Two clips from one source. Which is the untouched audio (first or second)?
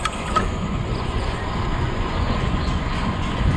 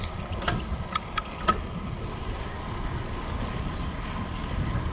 second